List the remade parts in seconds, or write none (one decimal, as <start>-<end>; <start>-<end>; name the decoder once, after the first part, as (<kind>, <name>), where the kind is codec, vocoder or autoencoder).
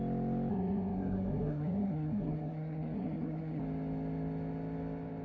0.5-3.6 (codec, SNAC)